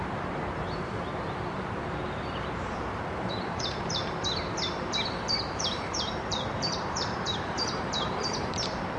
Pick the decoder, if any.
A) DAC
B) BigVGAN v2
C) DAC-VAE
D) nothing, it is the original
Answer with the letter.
B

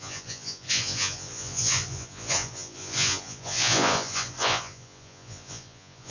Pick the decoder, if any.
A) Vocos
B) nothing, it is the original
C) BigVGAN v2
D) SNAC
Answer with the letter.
A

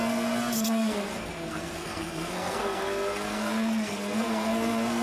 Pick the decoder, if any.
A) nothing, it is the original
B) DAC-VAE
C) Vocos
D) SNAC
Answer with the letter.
D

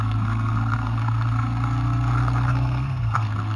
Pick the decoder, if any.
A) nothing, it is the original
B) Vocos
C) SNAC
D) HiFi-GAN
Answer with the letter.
C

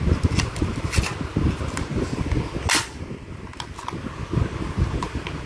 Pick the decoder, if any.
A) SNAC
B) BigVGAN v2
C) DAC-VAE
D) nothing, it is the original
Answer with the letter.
D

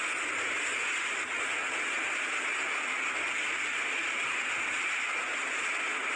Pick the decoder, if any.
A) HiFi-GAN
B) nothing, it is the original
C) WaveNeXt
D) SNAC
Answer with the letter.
B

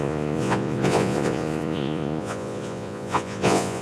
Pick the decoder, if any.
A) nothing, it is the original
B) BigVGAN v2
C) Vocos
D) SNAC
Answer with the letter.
C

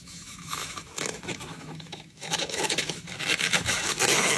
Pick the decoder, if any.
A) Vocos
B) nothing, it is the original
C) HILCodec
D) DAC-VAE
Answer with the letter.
D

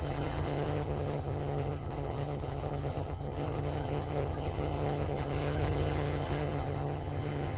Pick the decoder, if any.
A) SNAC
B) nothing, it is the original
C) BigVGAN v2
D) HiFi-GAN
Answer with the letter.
D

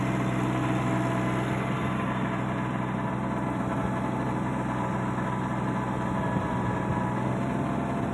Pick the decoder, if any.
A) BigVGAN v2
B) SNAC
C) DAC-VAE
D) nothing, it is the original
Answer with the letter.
D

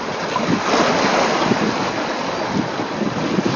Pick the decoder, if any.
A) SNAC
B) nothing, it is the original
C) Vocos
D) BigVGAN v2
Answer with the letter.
B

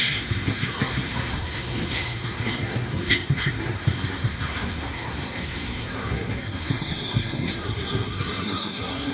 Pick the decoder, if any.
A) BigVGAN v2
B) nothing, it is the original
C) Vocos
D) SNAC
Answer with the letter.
D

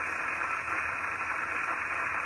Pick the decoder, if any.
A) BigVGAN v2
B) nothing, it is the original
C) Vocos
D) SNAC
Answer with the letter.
B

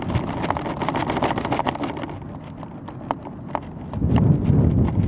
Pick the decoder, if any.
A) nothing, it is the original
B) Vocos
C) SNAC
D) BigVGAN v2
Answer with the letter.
A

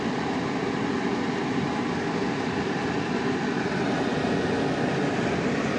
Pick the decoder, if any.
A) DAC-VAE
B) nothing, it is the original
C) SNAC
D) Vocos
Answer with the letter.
B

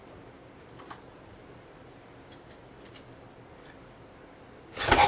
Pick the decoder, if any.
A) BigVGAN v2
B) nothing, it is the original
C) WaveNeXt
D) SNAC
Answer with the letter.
B